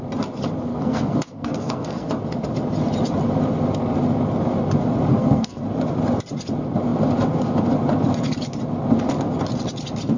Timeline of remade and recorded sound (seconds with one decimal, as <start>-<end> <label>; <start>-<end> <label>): 0.0-0.7 recorded; 0.7-2.1 remade; 2.1-5.1 recorded; 5.1-5.6 remade; 5.6-10.2 recorded

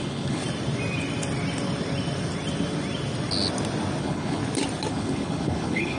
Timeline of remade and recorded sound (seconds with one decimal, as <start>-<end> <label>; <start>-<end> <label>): 0.0-0.4 remade; 0.4-4.0 recorded; 4.0-4.4 remade; 4.4-4.9 recorded; 4.9-6.0 remade

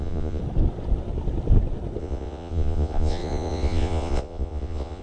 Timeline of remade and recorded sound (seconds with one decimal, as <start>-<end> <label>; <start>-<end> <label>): 0.0-0.4 remade; 0.4-2.0 recorded; 2.0-5.0 remade

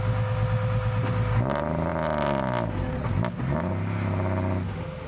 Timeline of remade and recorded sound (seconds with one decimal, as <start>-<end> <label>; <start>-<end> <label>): 0.0-5.1 recorded

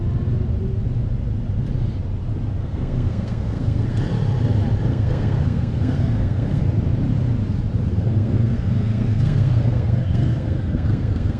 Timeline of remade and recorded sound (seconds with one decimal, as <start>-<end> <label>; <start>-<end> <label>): 0.0-2.6 recorded; 2.6-4.0 remade; 4.0-4.9 recorded; 4.9-6.6 remade; 6.6-7.9 recorded; 7.9-11.4 remade

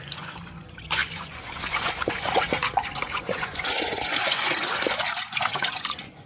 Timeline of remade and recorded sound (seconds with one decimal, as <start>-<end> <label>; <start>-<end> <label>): 0.0-6.3 remade

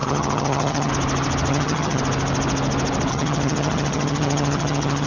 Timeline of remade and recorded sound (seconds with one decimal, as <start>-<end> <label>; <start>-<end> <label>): 0.0-0.9 remade; 0.9-1.5 recorded; 1.5-2.0 remade; 2.0-3.1 recorded; 3.1-5.1 remade